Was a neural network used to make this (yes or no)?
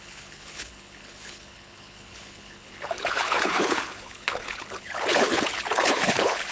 yes